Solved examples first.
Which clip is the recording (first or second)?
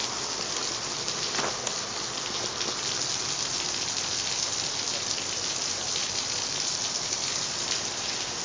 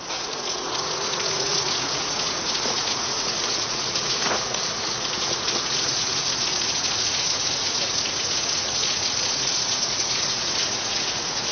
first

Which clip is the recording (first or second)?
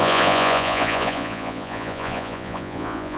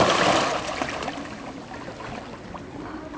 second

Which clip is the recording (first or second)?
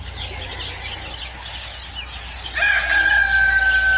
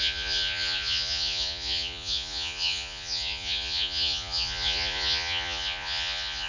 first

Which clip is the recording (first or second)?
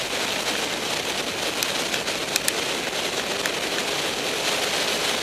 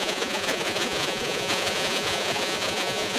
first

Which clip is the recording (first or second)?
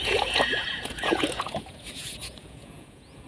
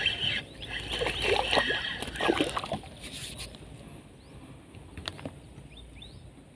second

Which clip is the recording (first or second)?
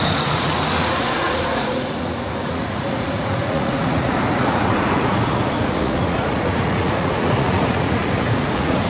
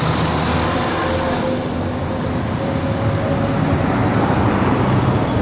second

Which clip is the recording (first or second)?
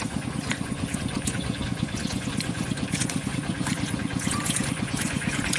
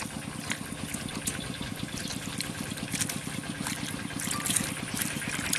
second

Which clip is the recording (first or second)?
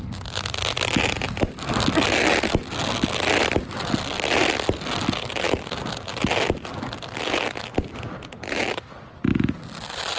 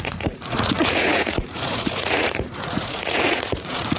first